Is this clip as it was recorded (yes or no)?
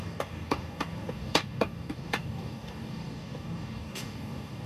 no